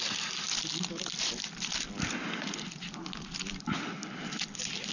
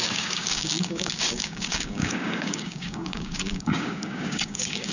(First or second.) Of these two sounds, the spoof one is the second